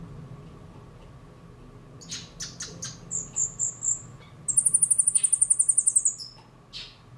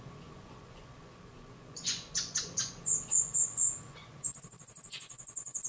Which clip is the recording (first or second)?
first